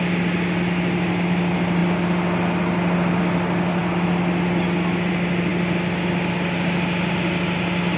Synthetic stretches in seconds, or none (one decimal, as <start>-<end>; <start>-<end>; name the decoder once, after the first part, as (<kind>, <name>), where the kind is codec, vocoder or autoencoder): none